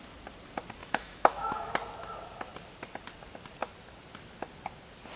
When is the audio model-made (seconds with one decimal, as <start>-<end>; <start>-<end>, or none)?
0.8-1.7